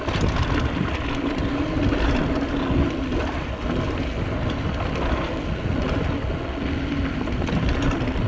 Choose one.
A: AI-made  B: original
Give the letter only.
B